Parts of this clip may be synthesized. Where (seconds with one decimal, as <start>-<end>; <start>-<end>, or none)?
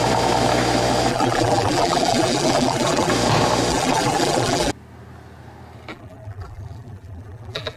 1.1-3.1; 3.7-4.7; 5.9-7.8